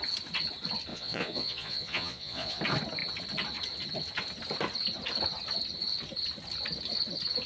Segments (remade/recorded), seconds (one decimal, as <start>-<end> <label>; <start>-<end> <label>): 0.0-0.9 recorded; 0.9-2.6 remade; 2.6-7.5 recorded